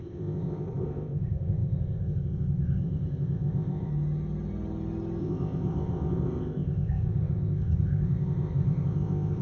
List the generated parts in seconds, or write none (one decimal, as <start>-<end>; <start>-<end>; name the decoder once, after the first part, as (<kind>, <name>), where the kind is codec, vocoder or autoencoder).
0.0-3.9 (codec, ZipCodec); 5.2-9.4